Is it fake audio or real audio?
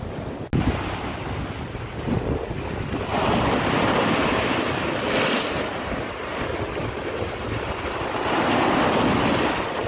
real